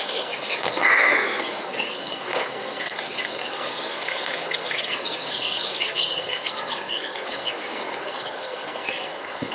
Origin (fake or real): fake